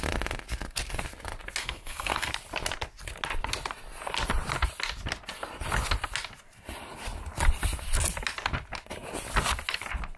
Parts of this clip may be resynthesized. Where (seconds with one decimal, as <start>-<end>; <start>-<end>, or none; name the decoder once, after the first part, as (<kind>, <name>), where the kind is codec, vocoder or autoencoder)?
1.6-2.3 (codec, SNAC)